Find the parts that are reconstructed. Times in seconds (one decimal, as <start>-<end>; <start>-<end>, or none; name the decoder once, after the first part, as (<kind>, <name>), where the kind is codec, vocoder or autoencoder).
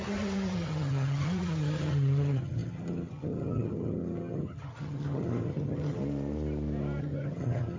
0.0-6.0 (vocoder, HiFi-GAN); 7.0-7.8